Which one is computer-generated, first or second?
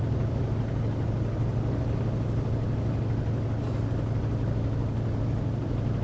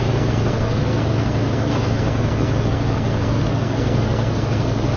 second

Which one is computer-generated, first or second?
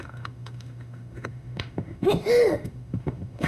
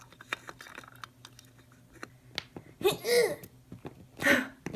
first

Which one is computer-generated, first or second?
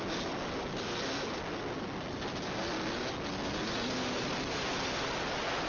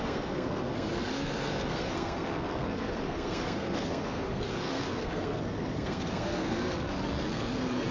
second